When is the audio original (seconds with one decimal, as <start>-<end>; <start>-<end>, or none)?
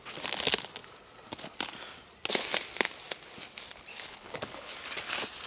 0.0-3.9; 4.7-5.5